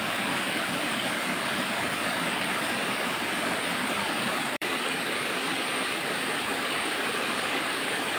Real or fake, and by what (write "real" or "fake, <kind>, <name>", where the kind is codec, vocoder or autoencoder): fake, codec, DAC